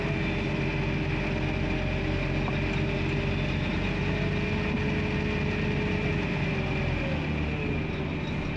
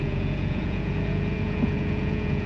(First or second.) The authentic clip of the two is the first